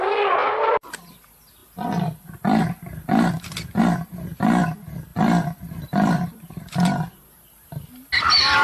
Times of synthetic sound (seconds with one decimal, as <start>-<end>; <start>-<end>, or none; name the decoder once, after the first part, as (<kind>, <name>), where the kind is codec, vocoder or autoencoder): 0.4-1.1 (vocoder, BigVGAN v2); 5.1-6.5

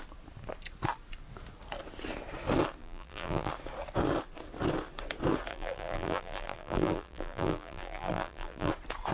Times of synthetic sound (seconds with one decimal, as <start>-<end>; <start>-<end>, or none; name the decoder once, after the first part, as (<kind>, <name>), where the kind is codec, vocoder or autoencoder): 2.8-3.5 (vocoder, BigVGAN v2); 5.5-8.7

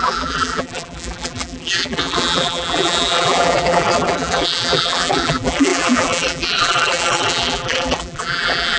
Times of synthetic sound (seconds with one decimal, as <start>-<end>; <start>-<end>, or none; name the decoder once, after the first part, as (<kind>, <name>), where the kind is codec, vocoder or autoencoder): 0.0-8.8 (vocoder, BigVGAN v2)

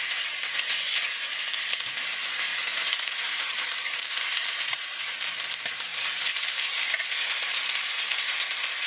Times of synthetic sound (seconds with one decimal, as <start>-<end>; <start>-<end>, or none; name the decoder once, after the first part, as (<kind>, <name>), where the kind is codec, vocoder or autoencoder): 2.5-5.0 (vocoder, BigVGAN v2); 5.9-6.8

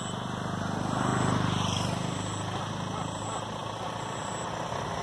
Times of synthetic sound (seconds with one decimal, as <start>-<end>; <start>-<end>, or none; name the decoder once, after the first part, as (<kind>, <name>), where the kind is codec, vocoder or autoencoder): 3.6-5.0 (vocoder, BigVGAN v2)

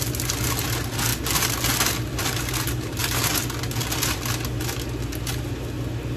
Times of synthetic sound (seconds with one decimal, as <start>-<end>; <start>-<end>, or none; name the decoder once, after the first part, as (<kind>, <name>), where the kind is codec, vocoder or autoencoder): none

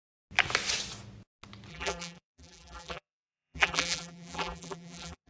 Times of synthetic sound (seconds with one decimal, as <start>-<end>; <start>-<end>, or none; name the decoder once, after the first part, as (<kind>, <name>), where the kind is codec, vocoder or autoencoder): 1.7-5.3 (vocoder, BigVGAN v2)

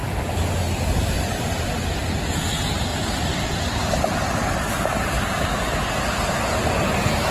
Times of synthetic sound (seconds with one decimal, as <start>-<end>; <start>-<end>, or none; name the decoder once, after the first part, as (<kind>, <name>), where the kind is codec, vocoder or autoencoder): 2.9-4.8 (vocoder, BigVGAN v2)